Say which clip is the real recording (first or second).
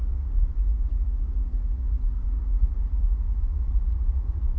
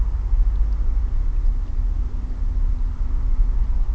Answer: second